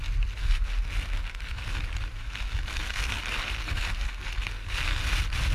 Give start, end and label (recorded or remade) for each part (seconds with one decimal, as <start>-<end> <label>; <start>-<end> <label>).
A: 0.0-0.4 recorded; 0.4-1.8 remade; 1.8-2.2 recorded; 2.2-3.2 remade; 3.2-3.6 recorded; 3.6-5.0 remade; 5.0-5.5 recorded